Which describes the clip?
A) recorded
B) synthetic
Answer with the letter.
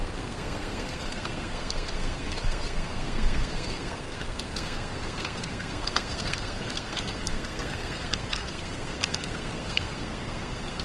B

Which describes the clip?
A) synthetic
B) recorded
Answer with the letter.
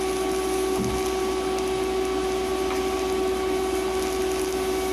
B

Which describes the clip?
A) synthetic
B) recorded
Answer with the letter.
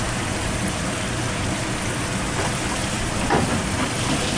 B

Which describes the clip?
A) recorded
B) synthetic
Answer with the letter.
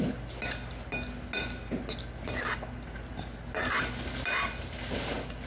A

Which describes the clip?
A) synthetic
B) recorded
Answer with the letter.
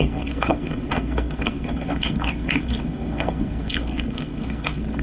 A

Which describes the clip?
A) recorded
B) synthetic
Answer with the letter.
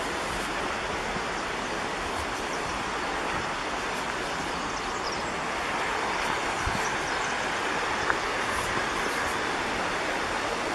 A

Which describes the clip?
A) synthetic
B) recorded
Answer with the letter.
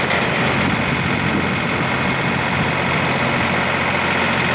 B